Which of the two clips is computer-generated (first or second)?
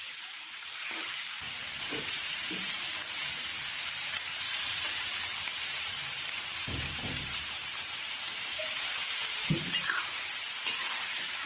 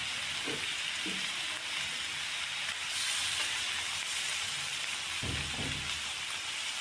first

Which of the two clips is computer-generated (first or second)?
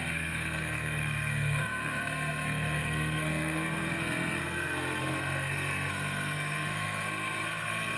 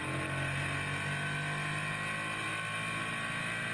first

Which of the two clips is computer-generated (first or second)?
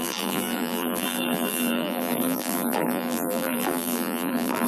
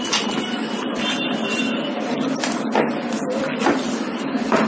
first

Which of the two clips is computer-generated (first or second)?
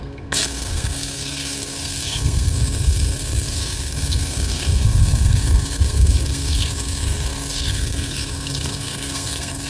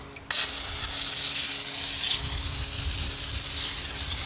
first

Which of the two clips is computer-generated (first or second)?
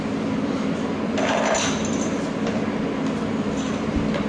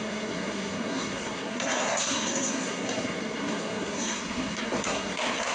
second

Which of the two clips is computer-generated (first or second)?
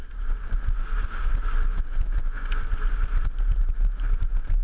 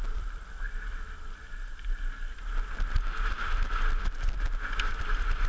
second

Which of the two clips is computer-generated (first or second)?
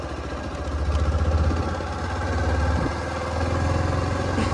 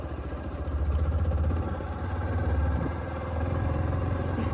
second